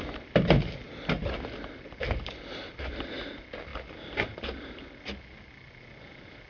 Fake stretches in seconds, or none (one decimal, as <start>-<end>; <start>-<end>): none